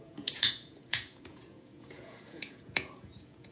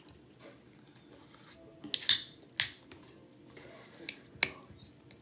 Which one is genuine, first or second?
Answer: second